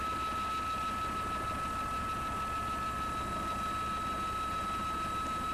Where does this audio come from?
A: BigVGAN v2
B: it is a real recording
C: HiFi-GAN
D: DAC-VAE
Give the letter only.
B